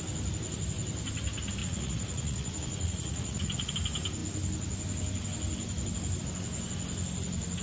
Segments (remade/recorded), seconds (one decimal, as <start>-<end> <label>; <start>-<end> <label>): 0.0-1.6 recorded; 1.6-3.7 remade; 3.7-7.6 recorded